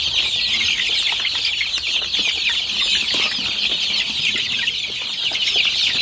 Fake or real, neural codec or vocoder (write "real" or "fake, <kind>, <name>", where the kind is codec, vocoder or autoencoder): real